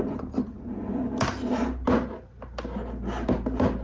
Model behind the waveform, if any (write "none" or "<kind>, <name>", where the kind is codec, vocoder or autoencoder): none